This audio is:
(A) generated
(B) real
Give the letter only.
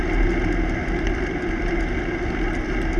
B